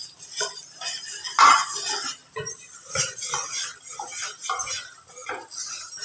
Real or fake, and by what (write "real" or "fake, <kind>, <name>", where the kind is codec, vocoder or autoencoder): real